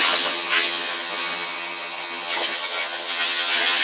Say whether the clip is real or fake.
fake